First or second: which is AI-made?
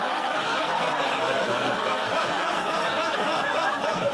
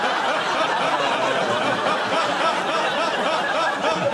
first